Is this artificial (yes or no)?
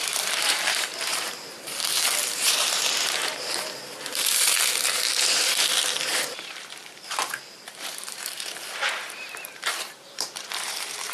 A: yes